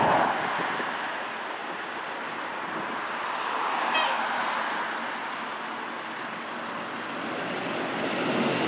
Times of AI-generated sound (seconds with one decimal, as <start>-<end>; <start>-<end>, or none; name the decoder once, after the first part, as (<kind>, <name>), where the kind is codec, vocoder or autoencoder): none